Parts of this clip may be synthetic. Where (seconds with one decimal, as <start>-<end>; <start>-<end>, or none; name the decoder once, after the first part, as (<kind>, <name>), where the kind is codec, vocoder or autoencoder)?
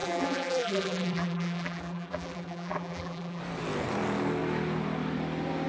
0.0-3.4 (vocoder, BigVGAN v2)